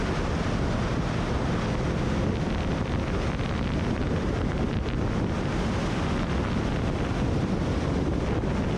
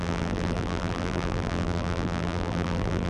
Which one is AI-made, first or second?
second